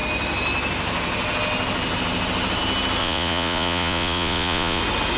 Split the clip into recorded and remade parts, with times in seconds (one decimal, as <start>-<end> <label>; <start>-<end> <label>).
0.0-3.0 recorded; 3.0-4.8 remade; 4.8-5.2 recorded